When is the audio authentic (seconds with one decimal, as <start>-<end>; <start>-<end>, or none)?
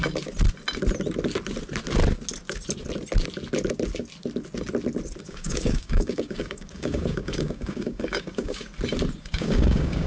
0.0-5.2; 8.7-9.2